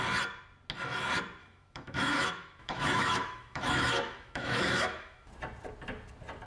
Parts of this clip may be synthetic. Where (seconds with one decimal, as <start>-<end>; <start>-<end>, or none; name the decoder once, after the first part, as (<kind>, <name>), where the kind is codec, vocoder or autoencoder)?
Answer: 1.4-5.3 (autoencoder, DAC-VAE)